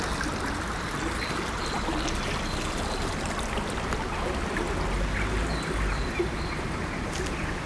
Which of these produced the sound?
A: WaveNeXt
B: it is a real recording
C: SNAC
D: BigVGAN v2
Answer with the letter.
B